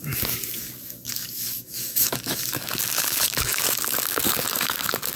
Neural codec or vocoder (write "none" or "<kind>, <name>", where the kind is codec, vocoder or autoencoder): codec, DAC